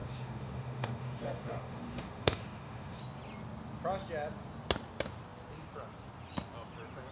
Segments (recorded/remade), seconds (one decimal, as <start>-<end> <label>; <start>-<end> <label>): 0.0-3.0 remade; 3.0-7.1 recorded